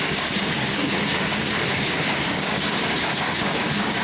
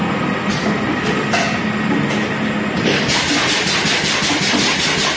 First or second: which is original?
second